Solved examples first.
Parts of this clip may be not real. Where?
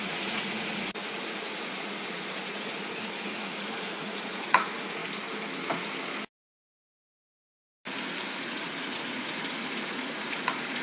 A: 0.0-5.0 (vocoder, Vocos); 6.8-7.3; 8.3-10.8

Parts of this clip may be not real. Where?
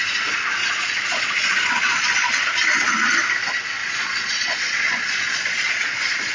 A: 0.6-2.3 (vocoder, Vocos); 3.8-6.3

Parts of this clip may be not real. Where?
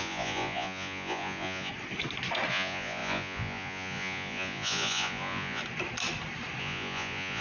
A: 0.0-1.7 (vocoder, Vocos); 2.5-5.6; 6.6-7.4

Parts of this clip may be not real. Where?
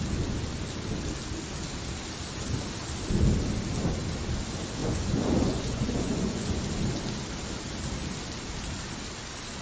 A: 4.8-6.6 (vocoder, Vocos)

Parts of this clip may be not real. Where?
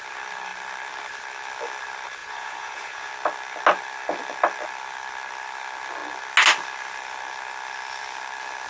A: 2.2-3.1 (vocoder, Vocos)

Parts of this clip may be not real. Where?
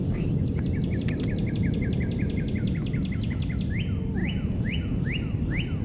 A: 4.2-5.0 (vocoder, Vocos)